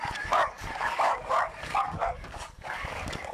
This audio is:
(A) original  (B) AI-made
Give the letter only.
B